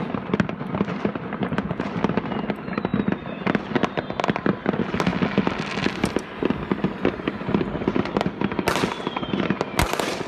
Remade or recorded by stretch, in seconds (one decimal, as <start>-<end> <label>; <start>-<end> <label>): 0.0-1.4 recorded; 1.4-1.9 remade; 1.9-10.3 recorded